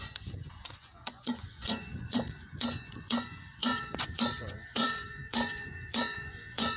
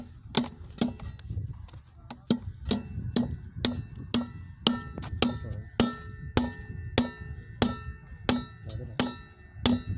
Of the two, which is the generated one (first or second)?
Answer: first